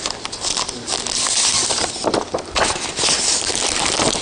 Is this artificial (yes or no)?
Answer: no